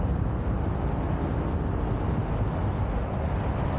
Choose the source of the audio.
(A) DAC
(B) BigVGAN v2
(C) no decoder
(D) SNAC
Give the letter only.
C